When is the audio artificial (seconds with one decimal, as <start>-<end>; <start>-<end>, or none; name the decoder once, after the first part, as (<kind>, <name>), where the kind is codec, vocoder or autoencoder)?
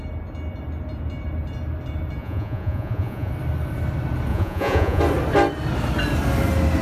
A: 2.2-3.3 (vocoder, Vocos); 4.3-5.0